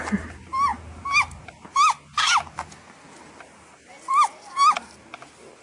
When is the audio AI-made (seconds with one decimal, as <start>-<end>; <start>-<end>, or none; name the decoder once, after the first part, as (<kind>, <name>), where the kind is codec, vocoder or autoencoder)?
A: none